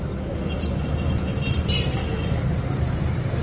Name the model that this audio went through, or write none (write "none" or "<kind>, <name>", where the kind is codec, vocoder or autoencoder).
vocoder, BigVGAN v2